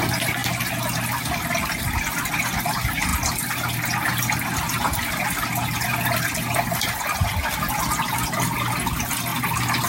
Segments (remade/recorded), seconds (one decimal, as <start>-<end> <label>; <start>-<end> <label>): 0.0-9.9 recorded